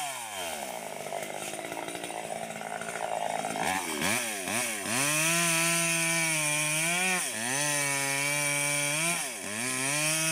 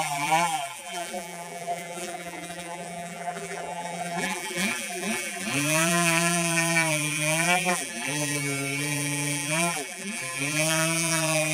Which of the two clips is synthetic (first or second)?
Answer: second